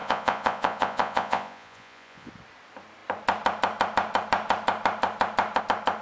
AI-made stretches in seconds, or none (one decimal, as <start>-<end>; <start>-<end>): 0.0-2.3